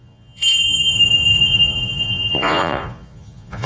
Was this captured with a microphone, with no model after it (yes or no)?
no